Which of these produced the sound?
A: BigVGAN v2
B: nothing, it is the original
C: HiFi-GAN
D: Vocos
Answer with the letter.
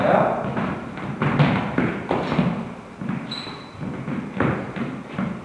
B